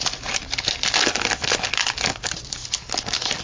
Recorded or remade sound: recorded